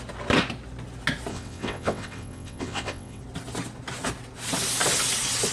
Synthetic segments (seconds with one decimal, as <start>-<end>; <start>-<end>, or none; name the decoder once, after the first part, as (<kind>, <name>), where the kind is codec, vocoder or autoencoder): 1.3-3.2 (vocoder, WaveNeXt)